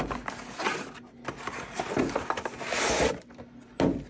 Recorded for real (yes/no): yes